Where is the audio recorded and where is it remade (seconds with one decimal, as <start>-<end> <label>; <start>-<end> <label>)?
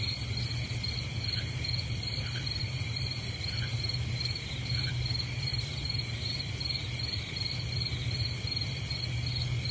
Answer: 0.0-2.1 recorded; 2.1-4.9 remade; 4.9-5.5 recorded; 5.5-6.5 remade; 6.5-8.0 recorded; 8.0-9.0 remade; 9.0-9.7 recorded